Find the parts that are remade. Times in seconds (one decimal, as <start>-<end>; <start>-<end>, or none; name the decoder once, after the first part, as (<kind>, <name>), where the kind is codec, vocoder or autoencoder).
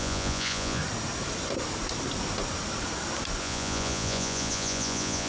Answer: 0.0-0.8 (vocoder, Vocos); 3.4-5.3